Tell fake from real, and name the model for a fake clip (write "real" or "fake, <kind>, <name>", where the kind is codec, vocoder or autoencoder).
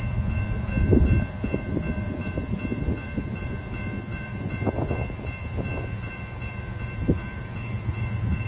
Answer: fake, vocoder, Vocos